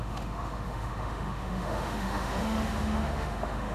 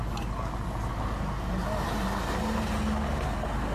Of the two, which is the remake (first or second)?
first